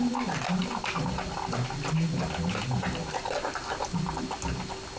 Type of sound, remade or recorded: recorded